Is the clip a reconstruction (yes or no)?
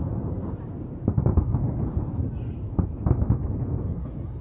no